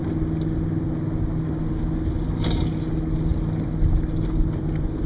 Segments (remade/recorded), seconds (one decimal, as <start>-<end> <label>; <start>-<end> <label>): 0.0-5.1 recorded